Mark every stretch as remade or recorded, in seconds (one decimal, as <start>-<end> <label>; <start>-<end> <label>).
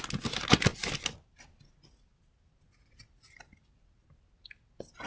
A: 0.0-5.1 recorded